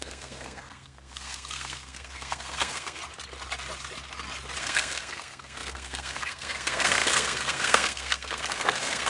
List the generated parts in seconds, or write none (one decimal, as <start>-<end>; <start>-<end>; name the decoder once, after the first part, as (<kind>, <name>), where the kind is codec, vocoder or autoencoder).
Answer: 0.0-3.0 (codec, SNAC); 4.6-9.1